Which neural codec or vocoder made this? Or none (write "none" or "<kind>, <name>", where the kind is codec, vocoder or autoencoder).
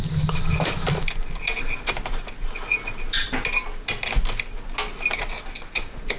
none